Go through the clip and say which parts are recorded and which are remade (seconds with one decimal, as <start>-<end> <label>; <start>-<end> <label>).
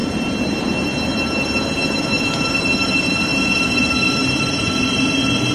0.0-3.3 remade; 3.3-4.2 recorded; 4.2-5.5 remade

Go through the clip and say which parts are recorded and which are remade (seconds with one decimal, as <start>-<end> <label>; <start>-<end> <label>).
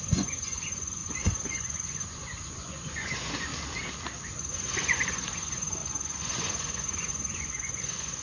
0.0-3.5 remade; 3.5-4.3 recorded; 4.3-8.2 remade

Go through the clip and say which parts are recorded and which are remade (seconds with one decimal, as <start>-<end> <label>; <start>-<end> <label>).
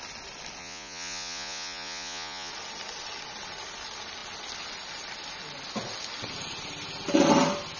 0.0-0.6 recorded; 0.6-2.5 remade; 2.5-7.8 recorded